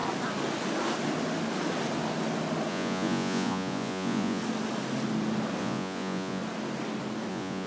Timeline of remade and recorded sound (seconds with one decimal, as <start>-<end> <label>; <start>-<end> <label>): 0.0-2.7 recorded; 2.7-4.4 remade; 4.4-5.6 recorded; 5.6-6.4 remade; 6.4-7.3 recorded; 7.3-7.7 remade